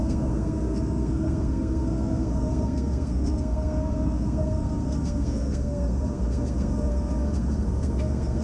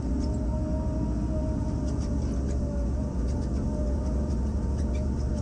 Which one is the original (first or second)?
second